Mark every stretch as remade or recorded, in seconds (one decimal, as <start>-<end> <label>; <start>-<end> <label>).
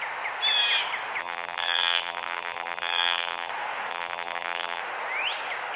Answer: 0.0-1.2 recorded; 1.2-3.5 remade; 3.5-3.9 recorded; 3.9-4.8 remade; 4.8-5.8 recorded